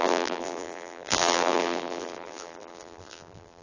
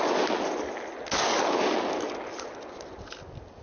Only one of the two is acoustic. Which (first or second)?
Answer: second